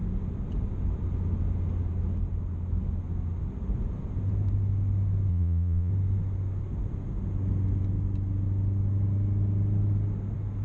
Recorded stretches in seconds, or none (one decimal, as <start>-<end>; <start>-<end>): 0.0-5.3; 5.9-10.6